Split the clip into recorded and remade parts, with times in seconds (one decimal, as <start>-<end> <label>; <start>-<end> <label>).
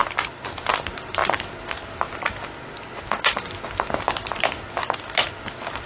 0.0-5.9 recorded